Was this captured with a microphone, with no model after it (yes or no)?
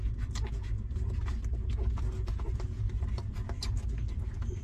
yes